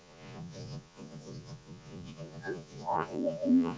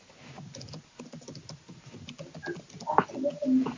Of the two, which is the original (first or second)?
second